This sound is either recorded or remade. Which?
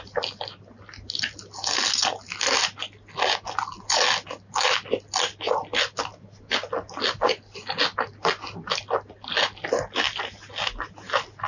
recorded